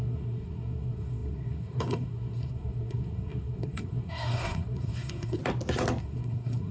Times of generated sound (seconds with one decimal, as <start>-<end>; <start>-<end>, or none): 0.0-5.4; 6.0-6.7